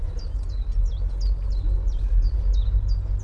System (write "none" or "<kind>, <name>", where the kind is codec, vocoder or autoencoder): none